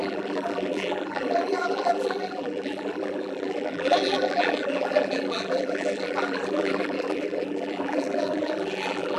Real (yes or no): no